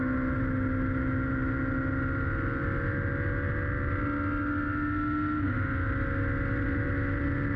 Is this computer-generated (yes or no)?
no